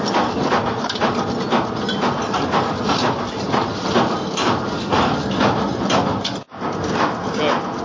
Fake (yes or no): no